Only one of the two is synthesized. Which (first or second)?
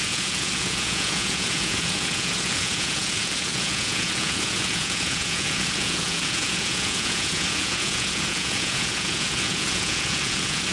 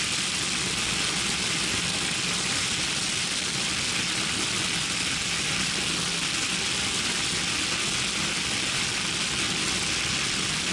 first